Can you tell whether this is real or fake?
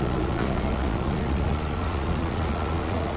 fake